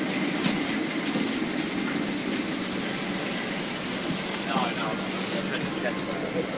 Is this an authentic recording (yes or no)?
yes